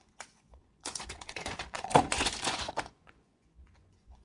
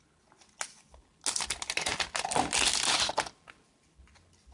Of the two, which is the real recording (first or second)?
second